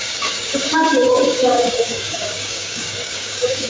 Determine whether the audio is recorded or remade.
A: remade